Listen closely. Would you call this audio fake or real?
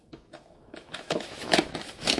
fake